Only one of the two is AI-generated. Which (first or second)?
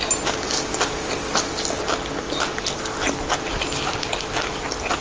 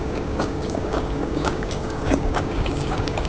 second